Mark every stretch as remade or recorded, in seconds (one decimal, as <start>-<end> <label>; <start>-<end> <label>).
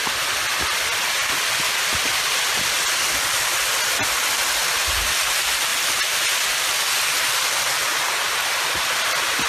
0.0-9.5 recorded